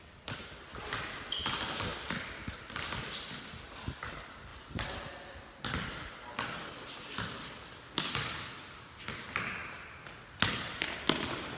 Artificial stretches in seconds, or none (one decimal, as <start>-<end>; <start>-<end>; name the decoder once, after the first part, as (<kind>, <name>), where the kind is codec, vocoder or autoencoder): none